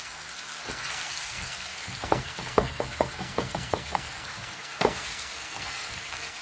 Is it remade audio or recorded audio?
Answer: remade